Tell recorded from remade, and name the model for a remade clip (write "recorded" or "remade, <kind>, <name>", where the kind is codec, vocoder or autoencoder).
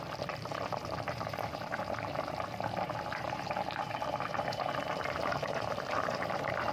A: remade, vocoder, BigVGAN v2